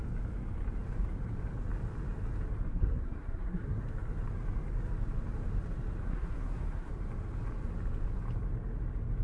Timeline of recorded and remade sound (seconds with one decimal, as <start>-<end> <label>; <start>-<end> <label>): 0.0-2.7 recorded; 2.7-3.8 remade; 3.8-6.0 recorded; 6.0-6.9 remade; 6.9-9.2 recorded